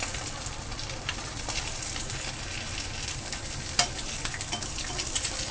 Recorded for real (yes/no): yes